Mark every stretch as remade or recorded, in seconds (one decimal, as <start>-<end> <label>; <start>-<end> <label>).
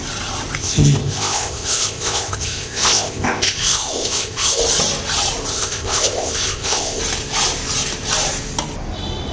0.0-0.6 recorded; 0.6-4.6 remade; 4.6-5.5 recorded; 5.5-7.0 remade; 7.0-9.3 recorded